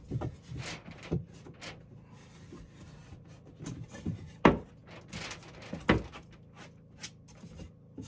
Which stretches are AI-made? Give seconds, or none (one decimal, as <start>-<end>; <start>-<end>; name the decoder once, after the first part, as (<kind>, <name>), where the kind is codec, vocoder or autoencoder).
none